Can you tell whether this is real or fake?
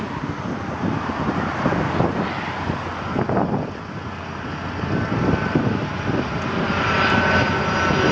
real